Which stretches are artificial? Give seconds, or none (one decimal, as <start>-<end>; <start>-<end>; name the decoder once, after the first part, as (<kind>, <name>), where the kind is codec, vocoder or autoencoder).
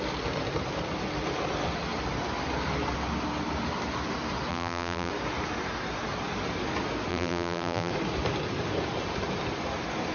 4.5-5.1 (vocoder, BigVGAN v2); 7.1-7.9